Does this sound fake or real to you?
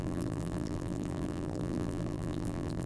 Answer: fake